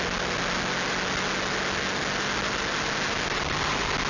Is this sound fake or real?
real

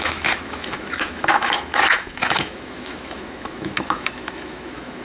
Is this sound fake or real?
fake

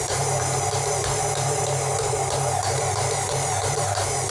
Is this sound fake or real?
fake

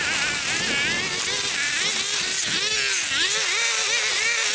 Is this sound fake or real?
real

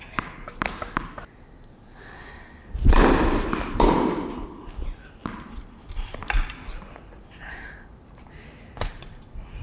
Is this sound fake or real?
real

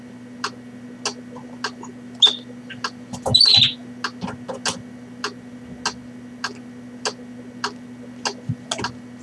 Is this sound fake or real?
real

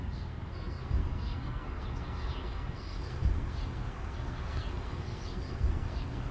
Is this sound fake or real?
fake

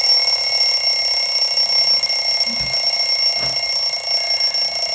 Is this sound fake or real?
real